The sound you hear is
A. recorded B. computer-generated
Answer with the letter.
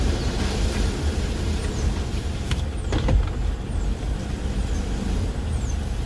B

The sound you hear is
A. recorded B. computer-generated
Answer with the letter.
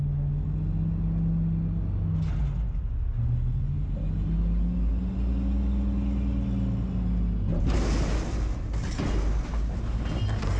A